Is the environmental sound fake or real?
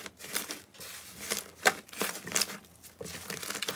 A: real